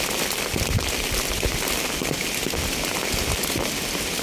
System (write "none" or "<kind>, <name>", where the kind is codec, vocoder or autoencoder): none